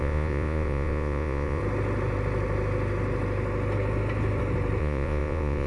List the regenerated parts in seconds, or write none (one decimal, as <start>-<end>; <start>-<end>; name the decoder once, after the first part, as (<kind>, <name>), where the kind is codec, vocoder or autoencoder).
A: 0.0-1.6 (vocoder, Vocos); 4.8-5.7